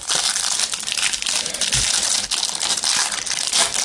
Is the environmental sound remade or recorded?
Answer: recorded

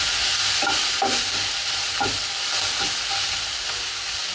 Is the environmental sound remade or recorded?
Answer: recorded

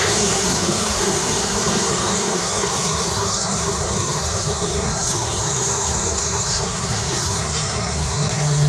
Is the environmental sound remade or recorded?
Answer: remade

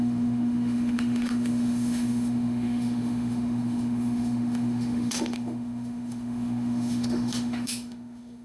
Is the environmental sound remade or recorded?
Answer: remade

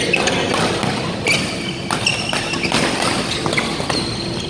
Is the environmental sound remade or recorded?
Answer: recorded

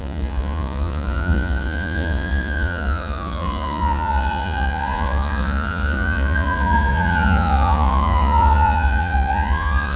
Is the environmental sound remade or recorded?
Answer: remade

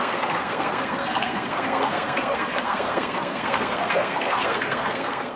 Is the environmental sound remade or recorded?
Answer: remade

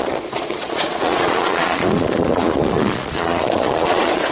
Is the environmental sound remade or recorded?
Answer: remade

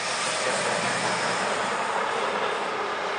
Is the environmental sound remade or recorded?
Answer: recorded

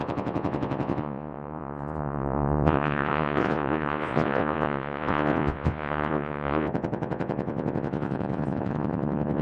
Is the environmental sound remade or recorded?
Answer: remade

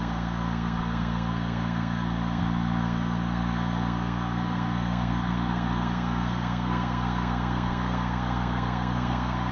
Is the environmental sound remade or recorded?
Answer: remade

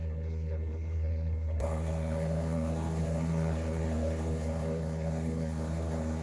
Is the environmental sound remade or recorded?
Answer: remade